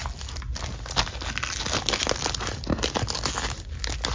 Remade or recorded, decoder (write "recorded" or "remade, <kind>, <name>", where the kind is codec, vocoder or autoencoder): recorded